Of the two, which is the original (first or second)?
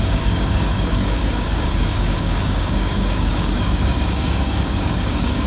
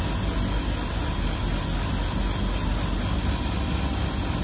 second